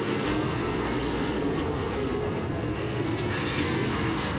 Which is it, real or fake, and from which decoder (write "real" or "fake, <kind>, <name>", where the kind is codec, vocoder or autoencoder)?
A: fake, codec, SNAC